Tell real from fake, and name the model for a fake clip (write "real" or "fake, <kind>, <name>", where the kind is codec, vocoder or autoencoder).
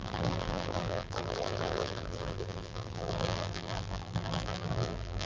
fake, vocoder, BigVGAN v2